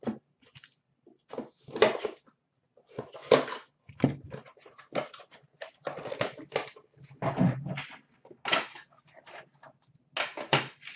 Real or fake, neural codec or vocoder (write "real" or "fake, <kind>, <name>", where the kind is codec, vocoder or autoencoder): real